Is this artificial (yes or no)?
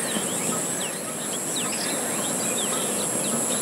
no